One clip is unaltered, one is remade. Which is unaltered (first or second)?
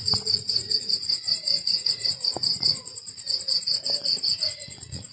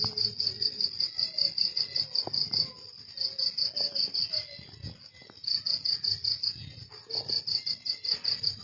second